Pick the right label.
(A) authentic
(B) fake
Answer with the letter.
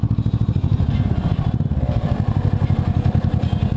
A